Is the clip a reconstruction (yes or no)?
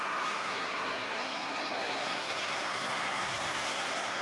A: yes